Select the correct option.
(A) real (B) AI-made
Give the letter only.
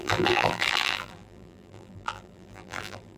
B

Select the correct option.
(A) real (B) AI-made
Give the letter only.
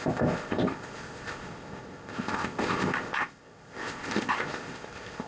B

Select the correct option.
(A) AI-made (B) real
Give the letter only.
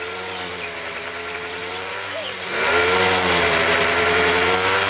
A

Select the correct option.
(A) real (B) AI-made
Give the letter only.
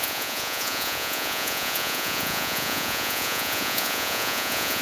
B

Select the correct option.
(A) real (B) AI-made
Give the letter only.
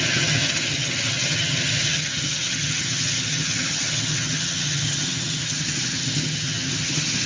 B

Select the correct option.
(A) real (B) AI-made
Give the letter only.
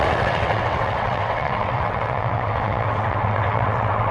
B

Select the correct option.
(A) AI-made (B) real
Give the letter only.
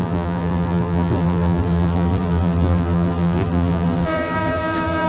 A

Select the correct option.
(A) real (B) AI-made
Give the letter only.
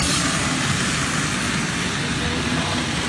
A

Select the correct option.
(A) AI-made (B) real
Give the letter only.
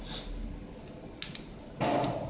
B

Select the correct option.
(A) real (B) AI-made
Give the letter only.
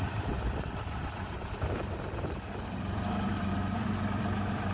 B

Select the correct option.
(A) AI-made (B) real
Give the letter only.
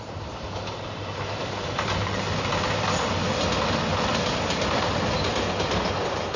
B